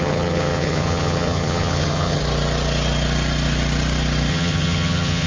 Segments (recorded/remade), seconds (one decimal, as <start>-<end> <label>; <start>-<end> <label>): 0.0-2.2 remade; 2.2-4.3 recorded; 4.3-5.3 remade